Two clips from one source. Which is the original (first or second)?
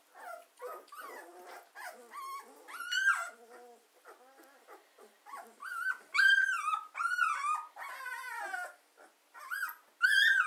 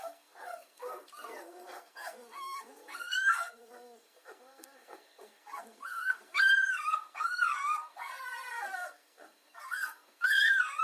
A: first